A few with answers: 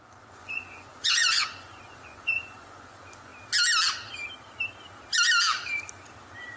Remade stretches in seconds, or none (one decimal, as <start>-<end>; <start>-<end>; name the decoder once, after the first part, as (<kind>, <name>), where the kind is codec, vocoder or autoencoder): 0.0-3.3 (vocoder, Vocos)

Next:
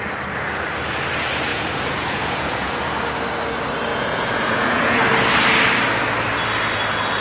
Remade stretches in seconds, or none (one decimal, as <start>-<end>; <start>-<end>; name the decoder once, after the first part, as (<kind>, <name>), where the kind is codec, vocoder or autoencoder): 1.5-2.9 (vocoder, Vocos); 3.9-5.0

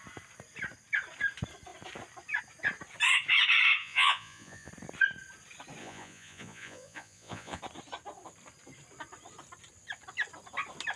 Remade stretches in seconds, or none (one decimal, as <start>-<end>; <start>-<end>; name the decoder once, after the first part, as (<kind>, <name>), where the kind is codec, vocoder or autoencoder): 3.8-4.7 (vocoder, Vocos); 5.8-7.6

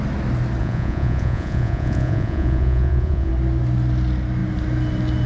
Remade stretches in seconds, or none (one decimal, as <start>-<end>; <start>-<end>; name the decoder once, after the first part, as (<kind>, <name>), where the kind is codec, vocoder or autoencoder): 0.6-3.3 (vocoder, Vocos)

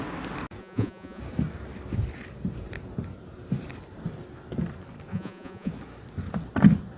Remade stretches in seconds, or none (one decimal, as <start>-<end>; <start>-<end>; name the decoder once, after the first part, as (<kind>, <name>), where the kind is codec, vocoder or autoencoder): 0.6-1.2 (vocoder, Vocos); 5.1-5.7

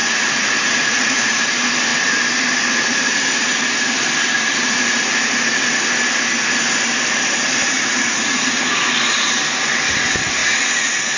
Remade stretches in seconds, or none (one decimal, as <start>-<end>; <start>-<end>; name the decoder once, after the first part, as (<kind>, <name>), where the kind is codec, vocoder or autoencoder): 0.0-1.4 (vocoder, Vocos); 7.7-8.9; 10.4-11.2

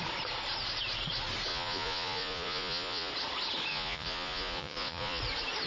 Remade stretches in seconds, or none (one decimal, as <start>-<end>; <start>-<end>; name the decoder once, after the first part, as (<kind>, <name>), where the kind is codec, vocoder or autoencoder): 1.5-3.1 (vocoder, Vocos); 3.7-5.2